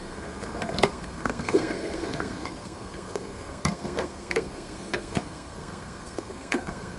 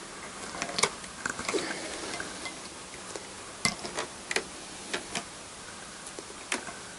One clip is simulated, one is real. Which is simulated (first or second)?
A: first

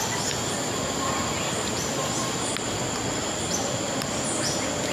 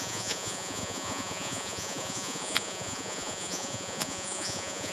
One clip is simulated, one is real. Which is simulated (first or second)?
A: second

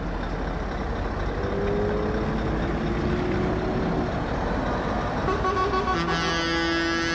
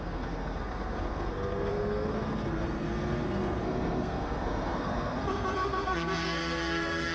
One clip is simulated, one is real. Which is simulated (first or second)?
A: second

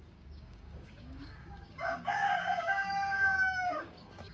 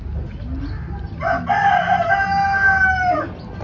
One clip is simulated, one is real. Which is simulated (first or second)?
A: first